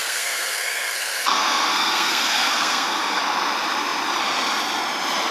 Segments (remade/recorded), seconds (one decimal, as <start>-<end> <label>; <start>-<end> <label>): 0.0-3.2 remade; 3.2-5.3 recorded